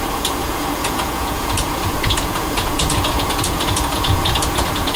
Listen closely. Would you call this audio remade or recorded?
remade